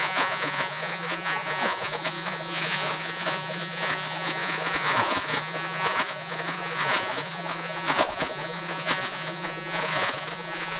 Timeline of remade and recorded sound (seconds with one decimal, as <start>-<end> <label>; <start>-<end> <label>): 0.0-10.8 remade